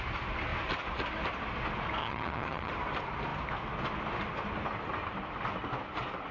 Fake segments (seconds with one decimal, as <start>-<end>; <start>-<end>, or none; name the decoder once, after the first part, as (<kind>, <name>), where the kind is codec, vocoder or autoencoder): 2.0-2.7 (vocoder, HiFi-GAN)